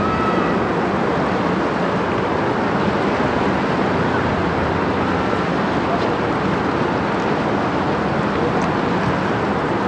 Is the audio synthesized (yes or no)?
no